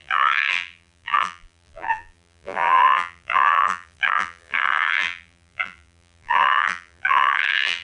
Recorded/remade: remade